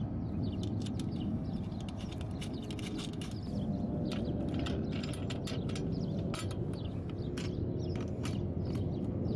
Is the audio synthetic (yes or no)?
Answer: no